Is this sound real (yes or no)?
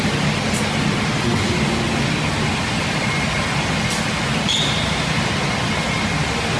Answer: yes